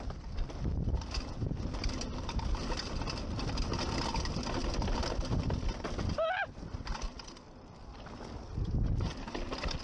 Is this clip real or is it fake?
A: real